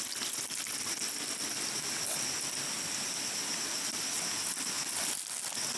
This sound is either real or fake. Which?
real